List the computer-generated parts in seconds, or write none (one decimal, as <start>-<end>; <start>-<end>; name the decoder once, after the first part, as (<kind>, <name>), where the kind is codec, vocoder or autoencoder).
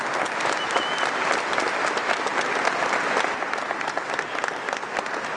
none